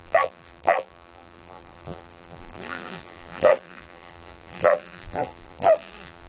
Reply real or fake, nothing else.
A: fake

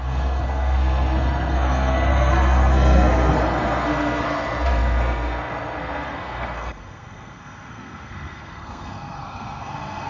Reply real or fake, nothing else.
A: fake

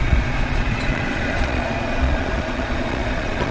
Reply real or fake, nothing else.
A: fake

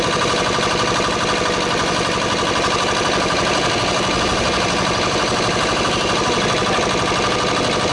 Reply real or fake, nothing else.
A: real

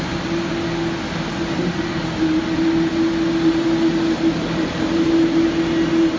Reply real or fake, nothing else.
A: real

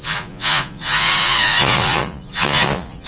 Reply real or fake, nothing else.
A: fake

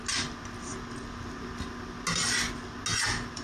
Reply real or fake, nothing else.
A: real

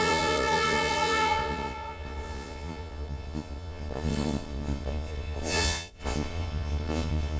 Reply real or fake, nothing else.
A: fake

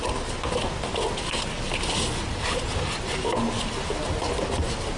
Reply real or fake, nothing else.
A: real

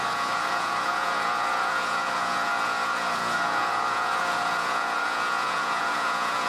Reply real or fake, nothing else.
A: fake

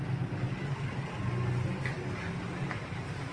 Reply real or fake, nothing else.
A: real